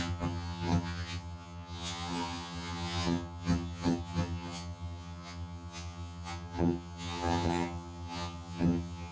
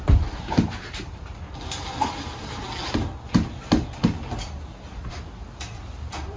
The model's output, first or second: first